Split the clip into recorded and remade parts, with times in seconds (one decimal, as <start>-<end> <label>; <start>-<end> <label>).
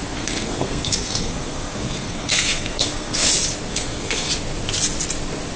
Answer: 0.0-3.3 remade; 3.3-3.7 recorded; 3.7-4.3 remade; 4.3-5.6 recorded